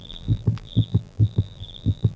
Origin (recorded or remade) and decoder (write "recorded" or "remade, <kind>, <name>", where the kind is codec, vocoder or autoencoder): remade, vocoder, BigVGAN v2